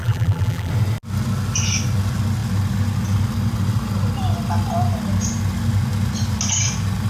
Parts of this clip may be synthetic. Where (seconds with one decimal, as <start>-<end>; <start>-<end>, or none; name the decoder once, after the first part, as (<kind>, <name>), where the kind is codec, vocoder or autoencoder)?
0.0-0.7 (vocoder, BigVGAN v2)